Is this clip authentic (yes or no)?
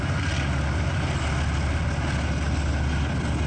yes